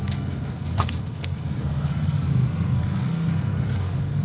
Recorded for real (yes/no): no